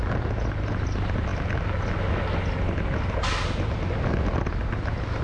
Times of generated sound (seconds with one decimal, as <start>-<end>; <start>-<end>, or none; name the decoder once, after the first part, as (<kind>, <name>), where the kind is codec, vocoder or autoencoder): none

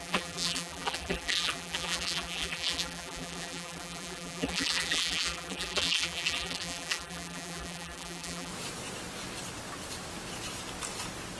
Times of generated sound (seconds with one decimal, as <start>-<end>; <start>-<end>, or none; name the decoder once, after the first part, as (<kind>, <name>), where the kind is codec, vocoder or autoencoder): 0.0-8.5 (vocoder, BigVGAN v2)